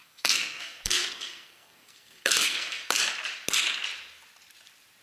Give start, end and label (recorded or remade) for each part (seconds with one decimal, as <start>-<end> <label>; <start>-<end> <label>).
0.0-3.0 remade; 3.0-5.0 recorded